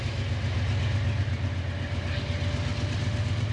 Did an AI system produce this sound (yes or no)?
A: no